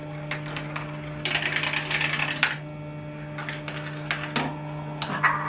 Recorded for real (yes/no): yes